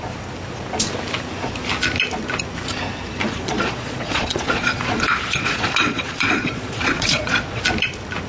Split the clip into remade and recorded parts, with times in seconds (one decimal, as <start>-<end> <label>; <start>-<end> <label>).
0.0-3.2 recorded; 3.2-7.6 remade; 7.6-8.3 recorded